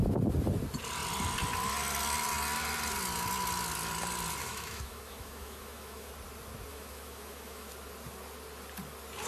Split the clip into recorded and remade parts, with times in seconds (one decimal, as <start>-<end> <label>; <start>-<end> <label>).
0.0-4.4 recorded; 4.4-6.1 remade; 6.1-6.7 recorded; 6.7-7.7 remade; 7.7-9.3 recorded